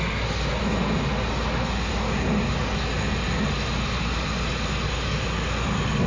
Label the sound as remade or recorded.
recorded